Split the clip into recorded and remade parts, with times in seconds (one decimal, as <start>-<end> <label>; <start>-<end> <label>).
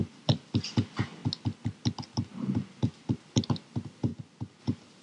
0.0-5.0 recorded